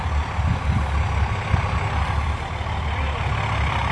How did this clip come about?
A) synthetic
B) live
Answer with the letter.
B